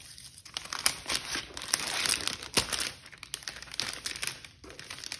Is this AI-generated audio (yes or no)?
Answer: no